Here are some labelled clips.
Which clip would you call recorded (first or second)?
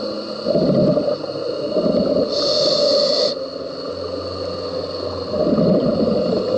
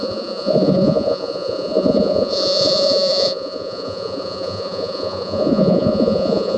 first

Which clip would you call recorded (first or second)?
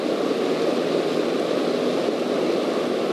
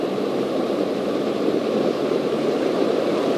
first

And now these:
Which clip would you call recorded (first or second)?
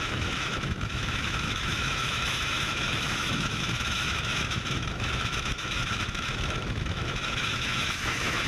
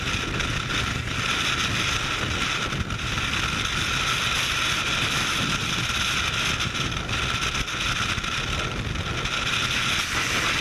second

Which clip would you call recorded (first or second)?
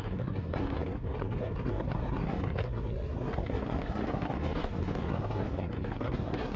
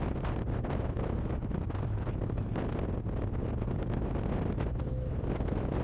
second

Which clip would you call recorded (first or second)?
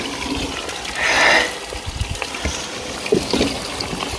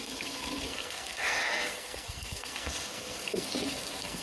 first